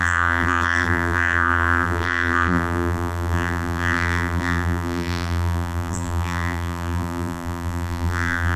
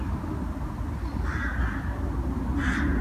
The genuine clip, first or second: second